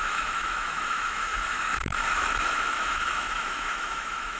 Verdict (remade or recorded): remade